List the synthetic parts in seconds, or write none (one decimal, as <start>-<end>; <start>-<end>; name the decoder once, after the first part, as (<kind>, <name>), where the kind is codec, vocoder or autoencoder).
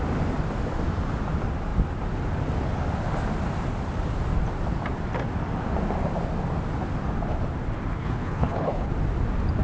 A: 7.9-8.9 (codec, HILCodec)